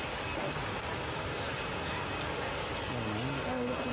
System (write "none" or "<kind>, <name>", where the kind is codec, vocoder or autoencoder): none